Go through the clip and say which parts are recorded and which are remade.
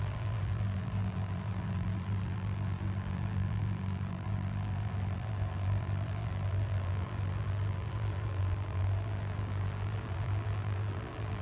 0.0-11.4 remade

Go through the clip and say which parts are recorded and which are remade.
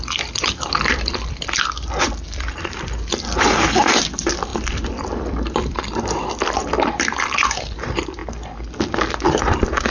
0.0-9.9 remade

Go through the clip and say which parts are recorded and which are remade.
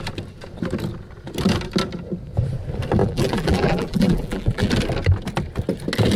0.0-3.0 recorded; 3.0-4.7 remade; 4.7-6.2 recorded